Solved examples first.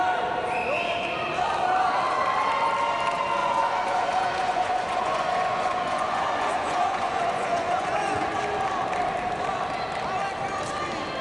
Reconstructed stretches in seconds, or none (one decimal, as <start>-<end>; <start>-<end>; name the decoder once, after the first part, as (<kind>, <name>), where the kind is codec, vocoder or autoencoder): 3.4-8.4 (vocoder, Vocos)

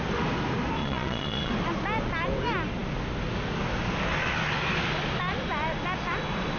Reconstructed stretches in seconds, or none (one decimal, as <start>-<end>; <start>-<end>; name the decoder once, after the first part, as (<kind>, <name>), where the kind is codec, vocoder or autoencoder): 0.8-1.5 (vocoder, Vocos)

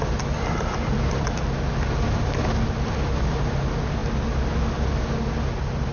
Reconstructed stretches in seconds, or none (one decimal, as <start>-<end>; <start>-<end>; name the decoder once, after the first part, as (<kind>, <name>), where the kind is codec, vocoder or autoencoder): none

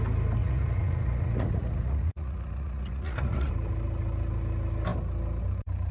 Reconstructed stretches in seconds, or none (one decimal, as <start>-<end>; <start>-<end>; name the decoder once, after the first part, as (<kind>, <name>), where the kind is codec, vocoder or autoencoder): 0.4-3.5 (vocoder, Vocos)

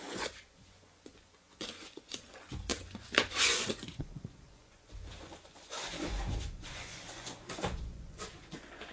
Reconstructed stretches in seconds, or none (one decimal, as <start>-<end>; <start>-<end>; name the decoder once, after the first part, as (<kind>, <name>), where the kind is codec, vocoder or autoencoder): 0.0-8.9 (vocoder, Vocos)

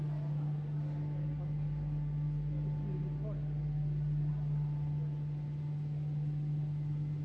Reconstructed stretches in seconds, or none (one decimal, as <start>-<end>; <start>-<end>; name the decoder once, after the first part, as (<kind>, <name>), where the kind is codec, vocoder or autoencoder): none